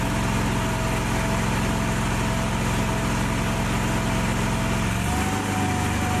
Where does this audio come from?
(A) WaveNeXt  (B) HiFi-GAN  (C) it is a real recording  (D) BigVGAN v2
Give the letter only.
C